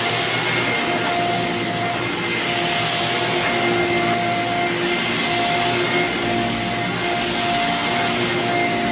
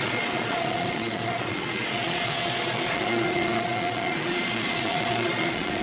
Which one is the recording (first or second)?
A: first